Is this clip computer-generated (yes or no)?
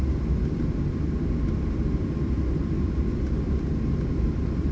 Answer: no